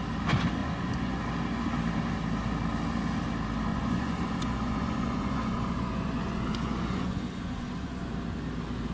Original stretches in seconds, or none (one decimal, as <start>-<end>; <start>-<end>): 0.0-0.6; 1.2-3.7; 8.1-8.9